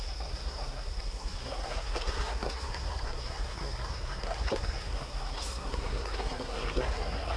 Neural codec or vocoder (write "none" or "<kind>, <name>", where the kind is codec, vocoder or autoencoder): codec, SNAC